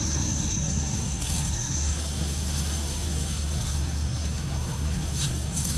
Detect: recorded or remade remade